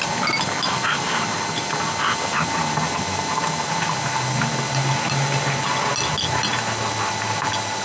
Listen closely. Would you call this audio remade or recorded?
recorded